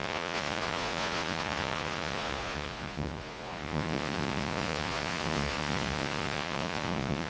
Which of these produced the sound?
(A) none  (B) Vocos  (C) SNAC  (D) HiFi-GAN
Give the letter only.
B